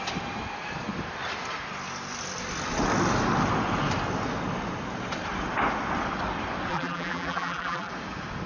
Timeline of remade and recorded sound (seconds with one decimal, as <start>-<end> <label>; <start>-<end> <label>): 0.0-6.7 recorded; 6.7-7.9 remade; 7.9-8.5 recorded